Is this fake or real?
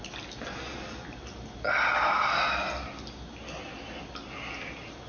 real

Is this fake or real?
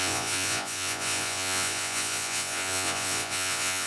fake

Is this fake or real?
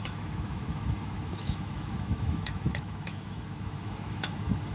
fake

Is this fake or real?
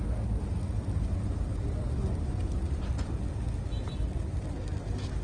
real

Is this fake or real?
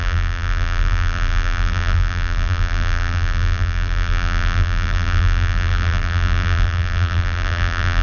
fake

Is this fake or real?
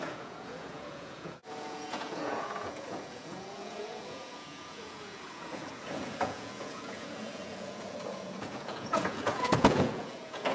fake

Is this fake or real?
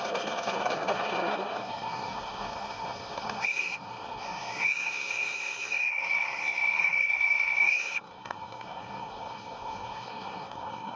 fake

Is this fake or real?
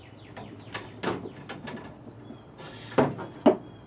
real